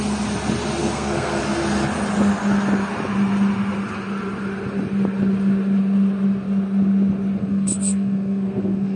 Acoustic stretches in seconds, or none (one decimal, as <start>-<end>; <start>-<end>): 0.0-0.8; 1.4-7.4